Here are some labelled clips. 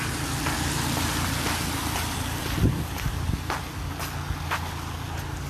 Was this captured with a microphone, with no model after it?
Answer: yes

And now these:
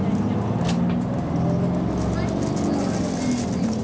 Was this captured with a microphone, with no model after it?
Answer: yes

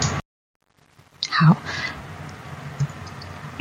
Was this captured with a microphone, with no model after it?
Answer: yes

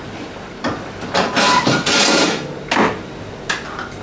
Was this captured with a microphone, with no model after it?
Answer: yes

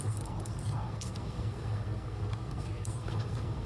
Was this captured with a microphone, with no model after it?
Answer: no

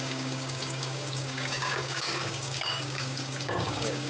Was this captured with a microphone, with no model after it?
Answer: no